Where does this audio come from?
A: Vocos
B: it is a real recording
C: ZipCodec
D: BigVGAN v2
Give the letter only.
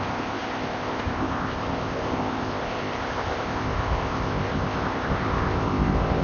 C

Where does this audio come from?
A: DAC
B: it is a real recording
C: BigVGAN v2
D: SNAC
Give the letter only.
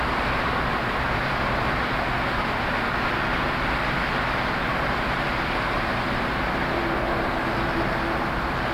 B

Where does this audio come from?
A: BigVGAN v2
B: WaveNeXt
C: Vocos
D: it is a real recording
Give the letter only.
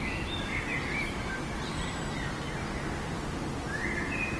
D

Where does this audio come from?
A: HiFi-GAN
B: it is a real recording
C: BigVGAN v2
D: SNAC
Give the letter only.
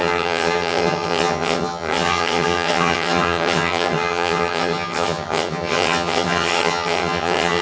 A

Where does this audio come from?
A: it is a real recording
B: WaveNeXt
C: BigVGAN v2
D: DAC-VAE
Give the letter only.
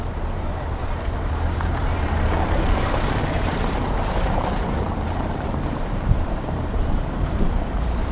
C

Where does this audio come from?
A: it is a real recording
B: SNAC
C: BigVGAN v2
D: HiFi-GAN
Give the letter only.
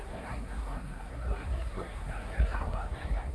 B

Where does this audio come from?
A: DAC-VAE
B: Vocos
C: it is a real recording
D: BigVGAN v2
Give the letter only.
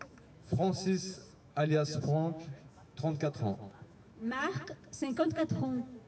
A